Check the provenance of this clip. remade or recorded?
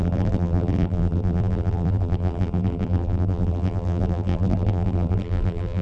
remade